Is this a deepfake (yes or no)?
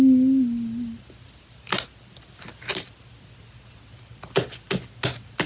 no